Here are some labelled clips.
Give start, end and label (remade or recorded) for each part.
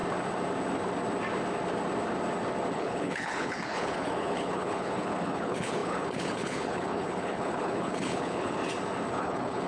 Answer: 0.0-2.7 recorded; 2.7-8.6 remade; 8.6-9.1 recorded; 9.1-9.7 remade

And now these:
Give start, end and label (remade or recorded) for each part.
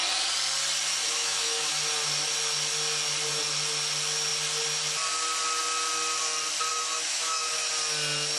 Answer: 0.0-1.0 recorded; 1.0-1.7 remade; 1.7-6.7 recorded; 6.7-7.7 remade; 7.7-8.4 recorded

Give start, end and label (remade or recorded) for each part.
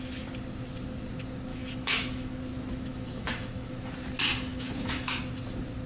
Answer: 0.0-1.5 recorded; 1.5-2.4 remade; 2.4-2.9 recorded; 2.9-3.9 remade; 3.9-4.5 recorded; 4.5-5.2 remade; 5.2-5.9 recorded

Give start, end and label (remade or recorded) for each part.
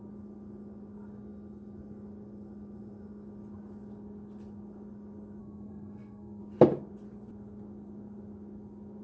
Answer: 0.0-5.4 recorded; 5.4-6.4 remade; 6.4-9.0 recorded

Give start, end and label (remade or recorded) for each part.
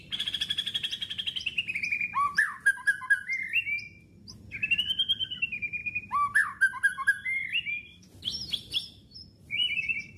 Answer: 0.0-9.1 recorded; 9.1-10.2 remade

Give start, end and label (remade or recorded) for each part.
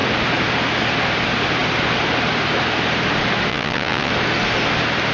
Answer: 0.0-3.5 recorded; 3.5-4.1 remade; 4.1-5.1 recorded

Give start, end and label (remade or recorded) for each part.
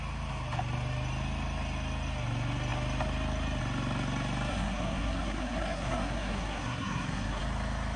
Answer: 0.0-4.5 recorded; 4.5-7.4 remade; 7.4-8.0 recorded